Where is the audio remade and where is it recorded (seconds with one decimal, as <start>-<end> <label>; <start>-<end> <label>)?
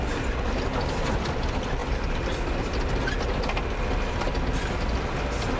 0.0-5.6 recorded